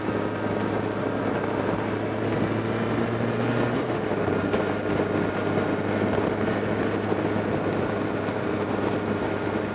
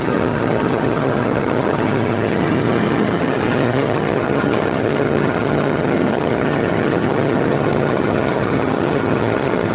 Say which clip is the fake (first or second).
second